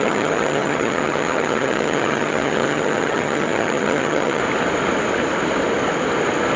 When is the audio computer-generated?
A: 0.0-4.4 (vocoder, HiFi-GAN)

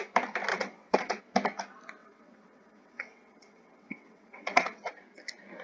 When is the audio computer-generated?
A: 0.5-1.2 (vocoder, WaveNeXt); 2.0-4.9

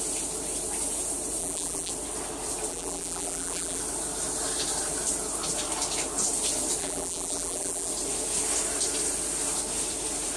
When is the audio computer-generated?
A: 1.4-1.9 (vocoder, BigVGAN v2); 2.7-3.8; 6.8-7.9

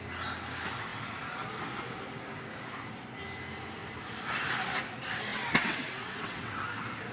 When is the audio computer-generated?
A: 5.3-6.5 (vocoder, WaveNeXt)